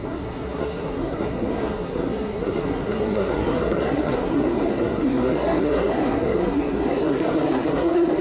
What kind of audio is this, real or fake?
fake